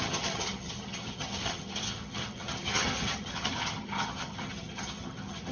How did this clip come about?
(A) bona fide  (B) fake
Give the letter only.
B